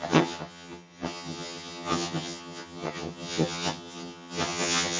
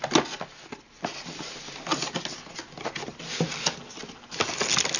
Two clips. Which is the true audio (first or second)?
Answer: second